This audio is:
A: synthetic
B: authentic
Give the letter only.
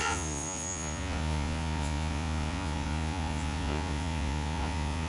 A